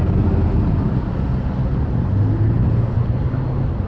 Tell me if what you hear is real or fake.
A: real